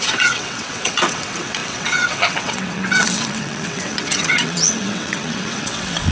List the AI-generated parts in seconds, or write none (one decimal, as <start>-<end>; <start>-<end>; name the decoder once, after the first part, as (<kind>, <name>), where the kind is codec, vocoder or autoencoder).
0.0-6.1 (vocoder, WaveNeXt)

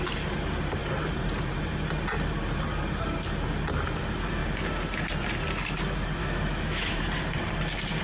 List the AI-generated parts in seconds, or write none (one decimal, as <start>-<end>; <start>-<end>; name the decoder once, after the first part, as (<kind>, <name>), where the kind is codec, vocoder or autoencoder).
6.2-7.0 (autoencoder, DAC-VAE)

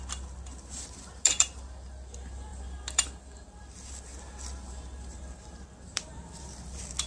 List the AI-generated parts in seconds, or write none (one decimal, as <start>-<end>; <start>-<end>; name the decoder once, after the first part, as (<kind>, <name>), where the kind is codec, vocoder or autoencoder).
0.0-7.1 (vocoder, BigVGAN v2)

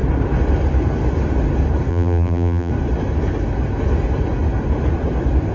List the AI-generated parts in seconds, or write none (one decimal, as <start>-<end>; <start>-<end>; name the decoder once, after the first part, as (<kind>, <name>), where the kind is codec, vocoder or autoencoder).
1.9-2.7 (vocoder, BigVGAN v2)

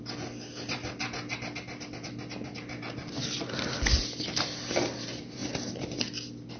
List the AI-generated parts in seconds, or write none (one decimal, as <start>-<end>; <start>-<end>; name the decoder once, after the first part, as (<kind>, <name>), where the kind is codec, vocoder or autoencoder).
none

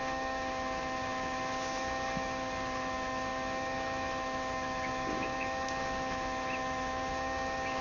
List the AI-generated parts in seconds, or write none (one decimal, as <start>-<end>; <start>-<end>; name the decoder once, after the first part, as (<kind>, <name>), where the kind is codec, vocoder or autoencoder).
0.0-7.8 (autoencoder, DAC-VAE)